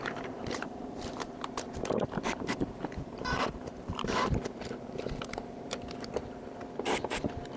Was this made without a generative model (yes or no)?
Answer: no